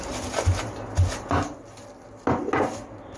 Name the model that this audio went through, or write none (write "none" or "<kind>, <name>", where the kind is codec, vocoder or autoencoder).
none